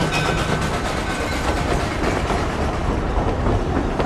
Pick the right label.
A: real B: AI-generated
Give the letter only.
A